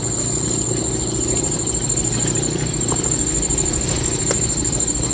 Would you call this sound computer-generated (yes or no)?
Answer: no